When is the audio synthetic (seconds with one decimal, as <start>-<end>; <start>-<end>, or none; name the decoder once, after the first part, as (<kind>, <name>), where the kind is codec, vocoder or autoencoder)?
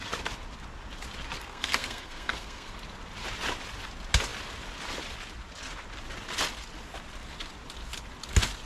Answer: 1.4-2.7 (codec, SNAC)